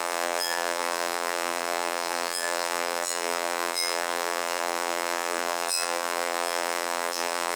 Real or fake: fake